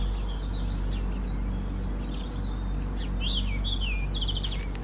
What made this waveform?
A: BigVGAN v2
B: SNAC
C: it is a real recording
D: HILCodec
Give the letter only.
C